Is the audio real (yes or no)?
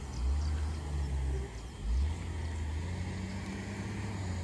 yes